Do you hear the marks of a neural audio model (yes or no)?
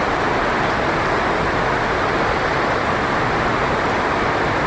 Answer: no